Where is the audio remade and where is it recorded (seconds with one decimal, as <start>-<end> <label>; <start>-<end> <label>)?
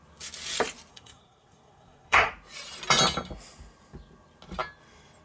0.0-0.9 recorded; 0.9-2.3 remade; 2.3-5.2 recorded